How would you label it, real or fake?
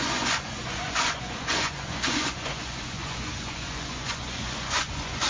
fake